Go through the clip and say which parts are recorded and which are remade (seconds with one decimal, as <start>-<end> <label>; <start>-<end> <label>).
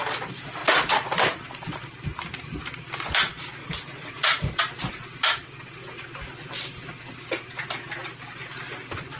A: 0.0-3.6 recorded; 3.6-4.6 remade; 4.6-9.2 recorded